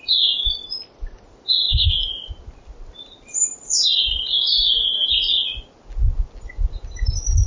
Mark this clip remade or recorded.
recorded